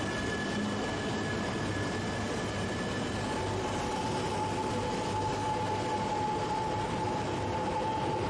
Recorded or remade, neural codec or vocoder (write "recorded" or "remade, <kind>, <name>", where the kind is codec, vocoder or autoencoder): recorded